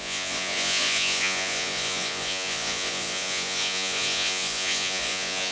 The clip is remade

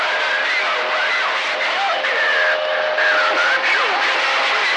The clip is recorded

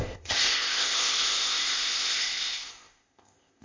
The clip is remade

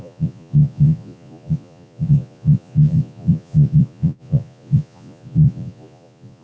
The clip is remade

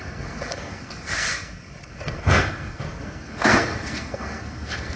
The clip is remade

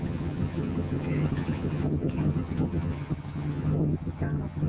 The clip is remade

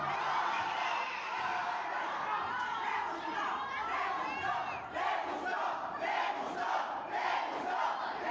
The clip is remade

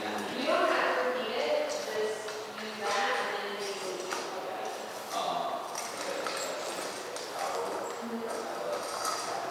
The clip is recorded